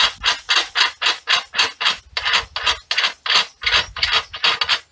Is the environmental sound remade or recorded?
recorded